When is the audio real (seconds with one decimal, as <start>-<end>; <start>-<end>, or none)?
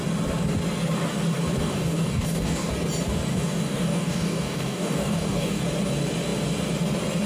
0.0-1.6; 2.7-3.3; 5.6-7.3